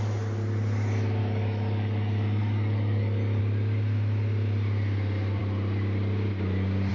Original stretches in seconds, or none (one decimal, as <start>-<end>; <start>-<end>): 0.0-1.2; 3.4-6.9